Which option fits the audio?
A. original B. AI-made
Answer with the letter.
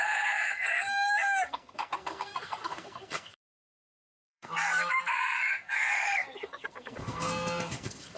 B